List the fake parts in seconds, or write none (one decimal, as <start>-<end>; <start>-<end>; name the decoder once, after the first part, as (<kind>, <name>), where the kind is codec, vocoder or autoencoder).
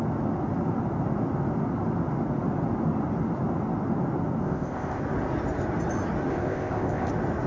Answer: 4.4-5.0 (codec, ZipCodec); 6.3-7.1